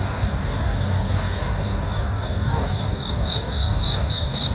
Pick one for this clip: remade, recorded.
remade